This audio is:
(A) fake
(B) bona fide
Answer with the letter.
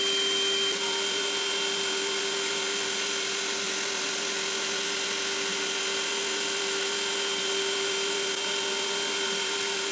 B